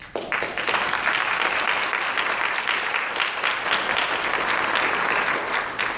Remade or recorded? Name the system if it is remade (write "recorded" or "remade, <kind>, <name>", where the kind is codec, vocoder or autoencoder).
recorded